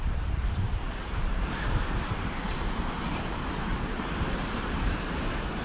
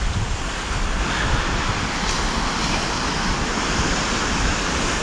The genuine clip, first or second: second